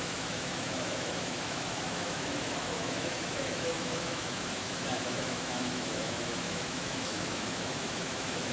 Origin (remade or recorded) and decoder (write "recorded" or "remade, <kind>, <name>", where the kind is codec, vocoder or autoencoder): remade, autoencoder, DAC-VAE